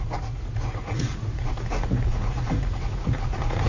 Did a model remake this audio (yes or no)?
yes